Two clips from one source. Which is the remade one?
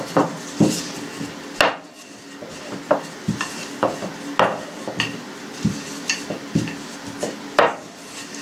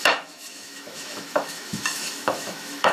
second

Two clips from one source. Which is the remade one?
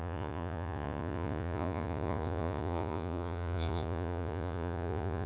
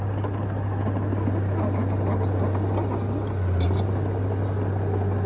first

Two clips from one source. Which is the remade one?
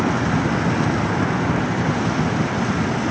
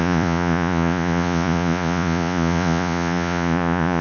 second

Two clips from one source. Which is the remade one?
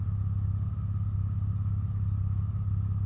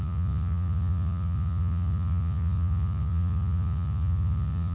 second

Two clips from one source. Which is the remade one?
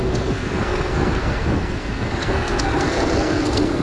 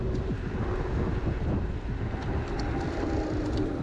first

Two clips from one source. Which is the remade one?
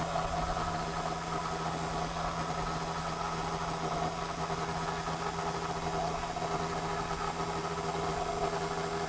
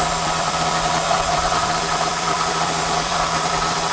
second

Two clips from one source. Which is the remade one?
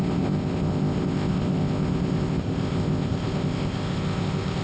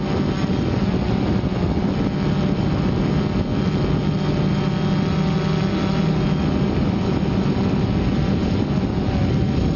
first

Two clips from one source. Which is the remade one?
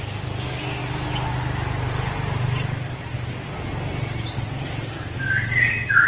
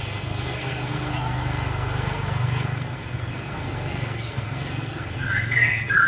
second